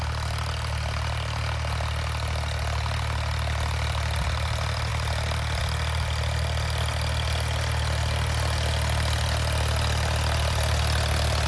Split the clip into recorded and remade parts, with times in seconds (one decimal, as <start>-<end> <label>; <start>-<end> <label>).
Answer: 0.0-11.5 recorded